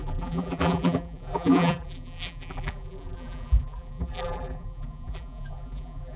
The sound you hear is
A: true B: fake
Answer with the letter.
B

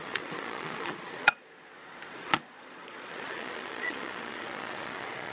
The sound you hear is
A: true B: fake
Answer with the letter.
B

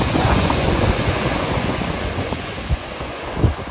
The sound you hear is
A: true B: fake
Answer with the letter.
B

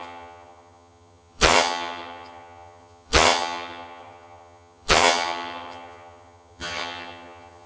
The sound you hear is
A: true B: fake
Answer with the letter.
B